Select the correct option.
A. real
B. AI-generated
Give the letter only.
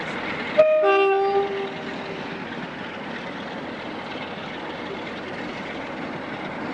A